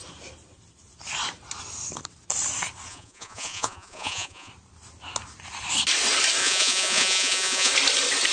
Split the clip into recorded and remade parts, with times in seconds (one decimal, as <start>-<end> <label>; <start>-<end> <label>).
0.0-2.9 recorded; 2.9-4.5 remade; 4.5-6.4 recorded; 6.4-7.7 remade; 7.7-8.3 recorded